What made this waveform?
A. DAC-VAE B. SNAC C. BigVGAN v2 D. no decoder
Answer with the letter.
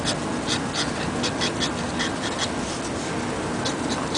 D